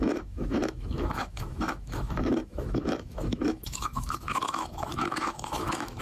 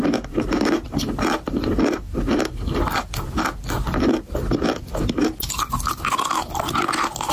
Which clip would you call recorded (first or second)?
second